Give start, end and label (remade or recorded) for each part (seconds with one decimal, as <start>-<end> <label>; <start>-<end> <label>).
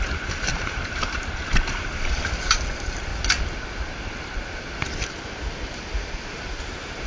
0.0-3.1 remade; 3.1-5.7 recorded; 5.7-7.1 remade